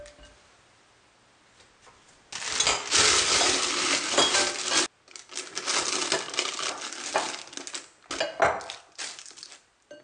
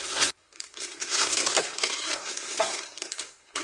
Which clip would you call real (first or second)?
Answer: first